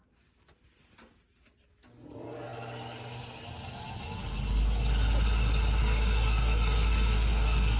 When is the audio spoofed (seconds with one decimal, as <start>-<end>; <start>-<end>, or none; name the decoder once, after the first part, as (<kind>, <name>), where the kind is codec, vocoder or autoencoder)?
5.8-7.8 (codec, SNAC)